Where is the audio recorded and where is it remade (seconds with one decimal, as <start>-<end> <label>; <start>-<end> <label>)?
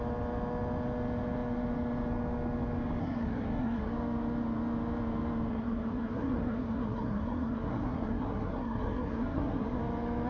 0.0-3.0 recorded; 3.0-3.9 remade; 3.9-5.5 recorded; 5.5-9.8 remade; 9.8-10.3 recorded